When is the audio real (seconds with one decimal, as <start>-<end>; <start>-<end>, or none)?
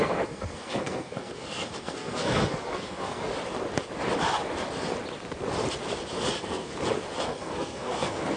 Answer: 3.3-6.3; 6.7-7.2